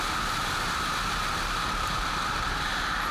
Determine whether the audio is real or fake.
fake